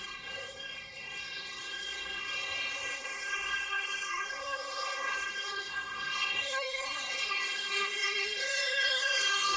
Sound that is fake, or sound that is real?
fake